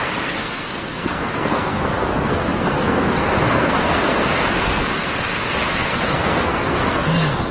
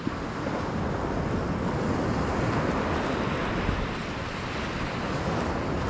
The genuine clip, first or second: second